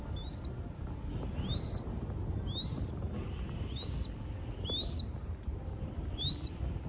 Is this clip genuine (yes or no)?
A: yes